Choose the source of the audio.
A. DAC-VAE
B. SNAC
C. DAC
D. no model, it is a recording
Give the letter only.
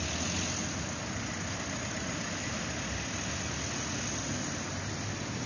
D